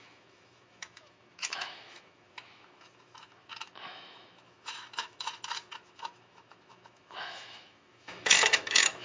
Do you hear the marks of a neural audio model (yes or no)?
yes